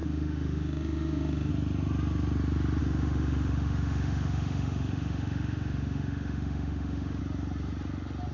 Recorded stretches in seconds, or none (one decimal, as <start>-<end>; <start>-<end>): 1.5-2.8; 7.2-8.3